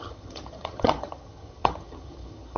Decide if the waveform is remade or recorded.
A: remade